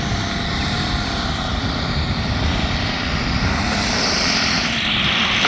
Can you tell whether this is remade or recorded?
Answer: remade